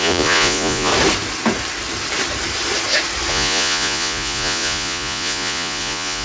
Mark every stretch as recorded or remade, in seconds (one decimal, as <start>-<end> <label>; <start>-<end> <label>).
0.0-0.9 remade; 0.9-3.3 recorded; 3.3-6.2 remade